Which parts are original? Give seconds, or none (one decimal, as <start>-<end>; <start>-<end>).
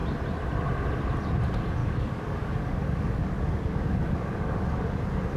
0.0-1.8; 5.0-5.4